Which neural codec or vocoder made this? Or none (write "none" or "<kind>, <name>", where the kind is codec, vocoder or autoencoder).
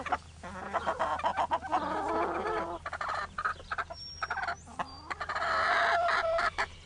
none